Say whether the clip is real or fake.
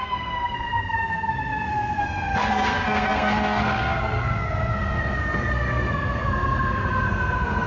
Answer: fake